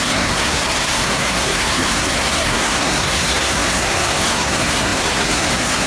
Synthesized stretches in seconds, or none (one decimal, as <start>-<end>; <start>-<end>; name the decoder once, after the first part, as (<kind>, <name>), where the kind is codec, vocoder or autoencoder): 0.0-5.9 (codec, SNAC)